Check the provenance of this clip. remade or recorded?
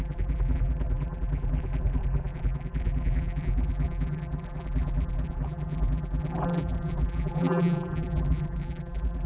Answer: remade